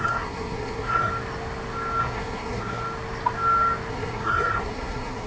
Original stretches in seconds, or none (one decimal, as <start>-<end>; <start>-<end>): 1.1-2.0; 2.8-3.9